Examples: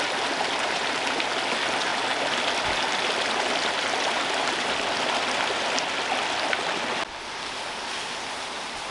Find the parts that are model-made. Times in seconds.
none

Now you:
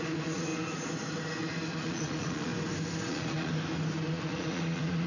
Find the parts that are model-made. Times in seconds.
0.0-0.5 (vocoder, Vocos); 1.7-2.5; 3.1-3.5; 4.1-5.1

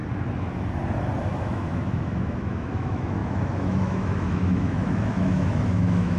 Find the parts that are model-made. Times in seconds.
1.2-6.2 (autoencoder, DAC-VAE)

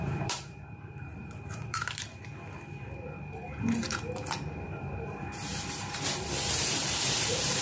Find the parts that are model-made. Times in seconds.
0.0-7.6 (vocoder, BigVGAN v2)

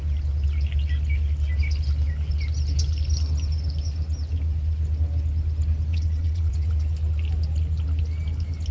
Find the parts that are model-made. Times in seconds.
5.9-6.7 (vocoder, WaveNeXt)

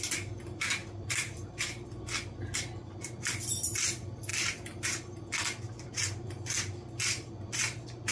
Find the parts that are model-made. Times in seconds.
0.0-4.3 (vocoder, BigVGAN v2); 5.7-8.1